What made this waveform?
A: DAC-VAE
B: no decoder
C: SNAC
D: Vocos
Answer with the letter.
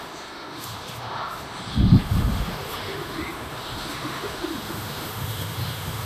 A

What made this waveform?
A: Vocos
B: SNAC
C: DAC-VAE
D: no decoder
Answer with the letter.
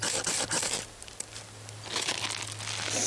D